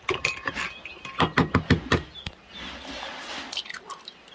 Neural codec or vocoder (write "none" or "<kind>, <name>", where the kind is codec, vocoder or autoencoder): none